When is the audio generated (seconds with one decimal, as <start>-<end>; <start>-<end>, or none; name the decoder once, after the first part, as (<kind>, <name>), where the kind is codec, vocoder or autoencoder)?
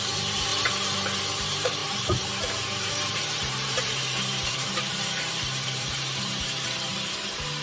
0.0-0.5 (vocoder, BigVGAN v2); 1.4-7.6